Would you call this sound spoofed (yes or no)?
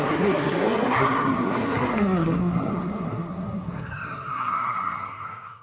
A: yes